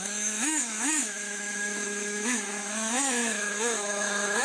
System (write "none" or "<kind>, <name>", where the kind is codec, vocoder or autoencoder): autoencoder, DAC-VAE